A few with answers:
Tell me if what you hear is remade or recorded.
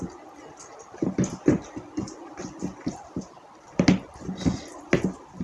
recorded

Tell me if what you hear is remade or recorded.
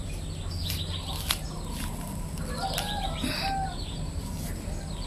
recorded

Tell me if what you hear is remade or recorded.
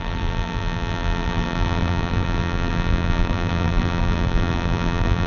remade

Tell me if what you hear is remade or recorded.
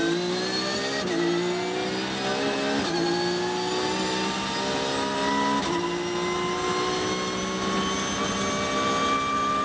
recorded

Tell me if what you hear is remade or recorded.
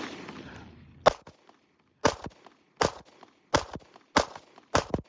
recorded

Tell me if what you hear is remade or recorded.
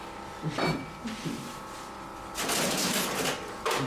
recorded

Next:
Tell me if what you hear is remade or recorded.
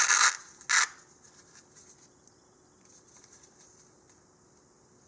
recorded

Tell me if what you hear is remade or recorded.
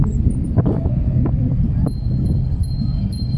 remade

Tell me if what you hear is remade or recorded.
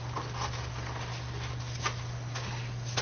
recorded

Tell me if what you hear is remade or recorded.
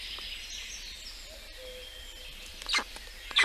recorded